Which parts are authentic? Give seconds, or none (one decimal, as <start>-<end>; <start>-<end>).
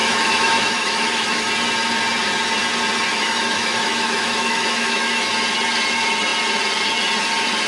1.5-3.1; 5.3-7.7